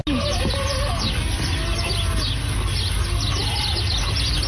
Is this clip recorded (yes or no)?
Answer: yes